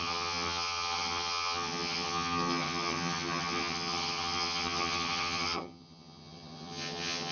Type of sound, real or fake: fake